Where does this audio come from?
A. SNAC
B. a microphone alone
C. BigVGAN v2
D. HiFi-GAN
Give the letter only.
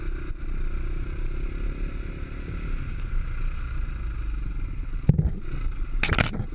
B